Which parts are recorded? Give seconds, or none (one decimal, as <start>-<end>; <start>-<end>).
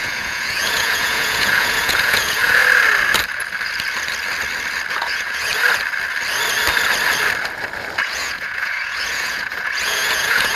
2.6-4.9; 5.5-8.0